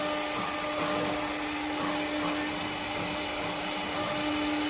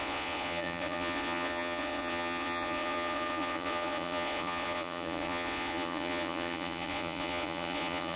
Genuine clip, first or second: first